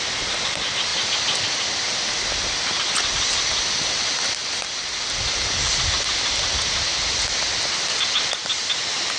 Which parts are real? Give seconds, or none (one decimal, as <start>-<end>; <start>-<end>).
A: 0.0-9.2